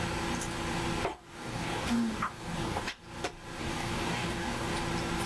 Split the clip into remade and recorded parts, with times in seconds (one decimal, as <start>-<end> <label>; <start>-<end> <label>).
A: 0.0-1.1 recorded; 1.1-3.0 remade; 3.0-3.6 recorded; 3.6-4.7 remade; 4.7-5.3 recorded